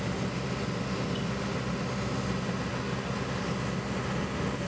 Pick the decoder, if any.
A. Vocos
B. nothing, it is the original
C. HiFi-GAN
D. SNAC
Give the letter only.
B